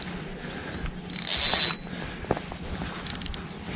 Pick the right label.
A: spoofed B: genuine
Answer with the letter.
B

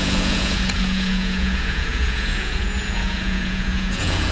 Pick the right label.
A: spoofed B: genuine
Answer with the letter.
A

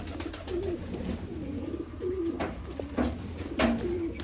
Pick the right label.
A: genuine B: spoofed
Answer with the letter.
A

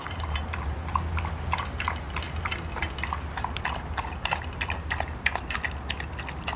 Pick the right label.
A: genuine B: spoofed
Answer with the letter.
A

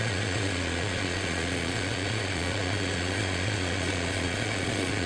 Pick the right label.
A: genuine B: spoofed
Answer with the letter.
B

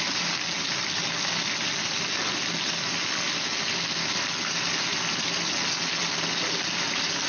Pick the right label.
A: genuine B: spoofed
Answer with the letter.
A